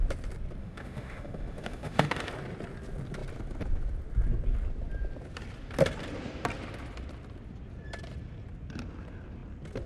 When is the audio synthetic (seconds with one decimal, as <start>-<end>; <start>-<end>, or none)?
0.6-2.3